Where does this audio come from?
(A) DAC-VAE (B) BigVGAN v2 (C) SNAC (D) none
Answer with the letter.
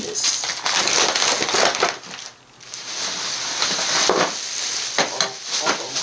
D